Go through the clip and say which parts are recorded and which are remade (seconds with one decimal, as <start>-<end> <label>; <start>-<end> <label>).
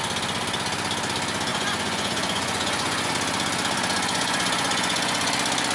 0.0-1.5 recorded; 1.5-3.1 remade; 3.1-3.9 recorded; 3.9-5.3 remade; 5.3-5.7 recorded